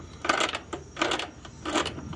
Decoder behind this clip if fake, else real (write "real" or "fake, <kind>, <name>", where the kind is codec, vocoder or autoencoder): real